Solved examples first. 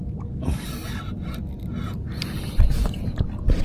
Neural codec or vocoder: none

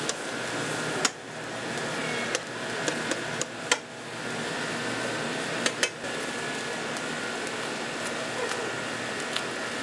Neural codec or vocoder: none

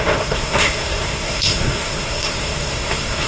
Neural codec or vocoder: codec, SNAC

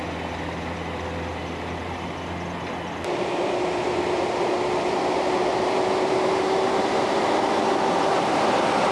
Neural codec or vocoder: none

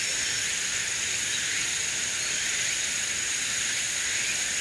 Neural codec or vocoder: none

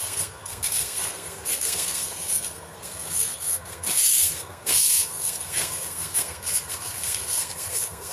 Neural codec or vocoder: codec, SNAC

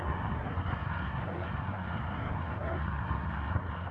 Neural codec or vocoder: codec, SNAC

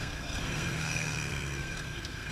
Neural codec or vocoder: codec, SNAC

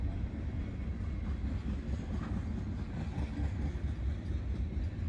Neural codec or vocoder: none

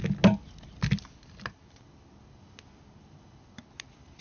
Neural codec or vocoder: none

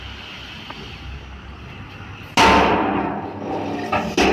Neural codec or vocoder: none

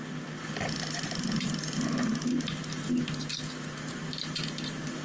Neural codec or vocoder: none